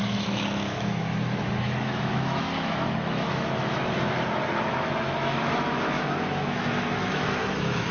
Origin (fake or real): fake